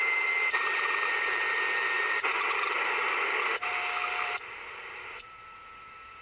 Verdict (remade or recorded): recorded